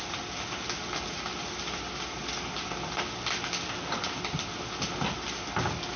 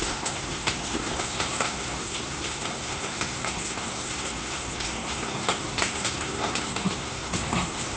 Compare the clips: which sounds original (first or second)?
first